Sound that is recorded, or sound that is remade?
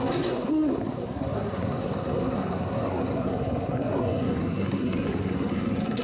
remade